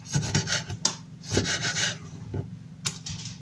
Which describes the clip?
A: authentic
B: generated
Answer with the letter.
A